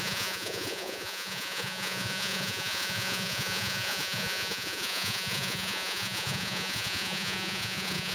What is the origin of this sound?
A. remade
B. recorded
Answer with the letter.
A